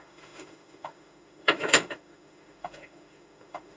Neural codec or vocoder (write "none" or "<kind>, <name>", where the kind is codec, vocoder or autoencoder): autoencoder, DAC-VAE